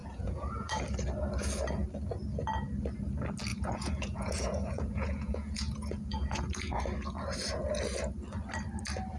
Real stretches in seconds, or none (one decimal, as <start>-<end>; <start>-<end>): 0.8-3.5; 6.8-9.2